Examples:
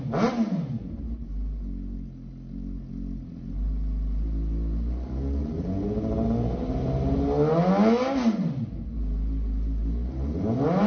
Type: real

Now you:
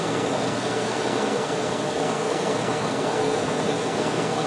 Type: fake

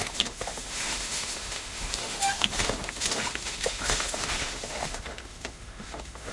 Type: fake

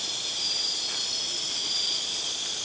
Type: real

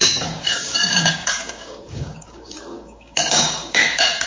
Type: fake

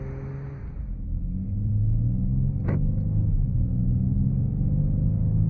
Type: real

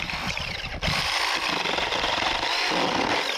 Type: real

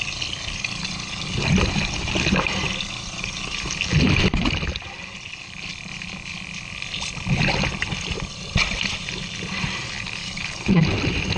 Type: real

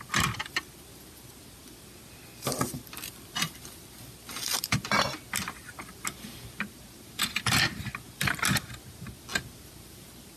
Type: real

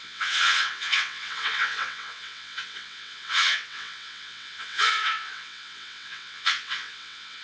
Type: fake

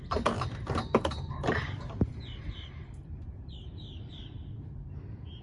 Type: fake